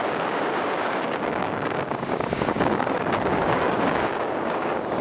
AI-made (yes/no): yes